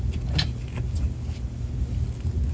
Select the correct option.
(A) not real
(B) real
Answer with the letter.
B